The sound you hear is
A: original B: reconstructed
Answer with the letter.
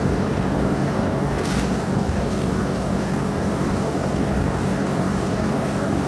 B